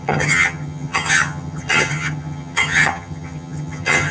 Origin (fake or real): fake